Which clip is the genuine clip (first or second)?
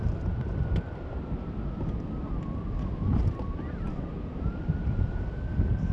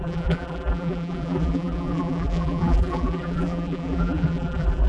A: first